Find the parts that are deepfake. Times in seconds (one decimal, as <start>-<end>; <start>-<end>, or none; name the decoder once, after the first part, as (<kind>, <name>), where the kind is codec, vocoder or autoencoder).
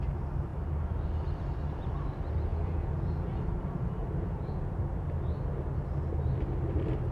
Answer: 2.5-4.7 (vocoder, Vocos)